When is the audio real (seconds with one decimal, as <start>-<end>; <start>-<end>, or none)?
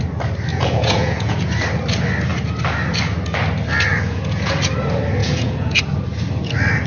0.0-0.5; 1.5-3.9; 4.5-5.2; 5.8-6.9